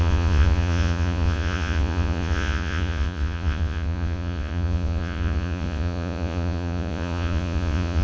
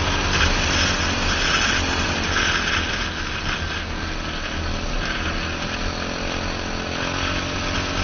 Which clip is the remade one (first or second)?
first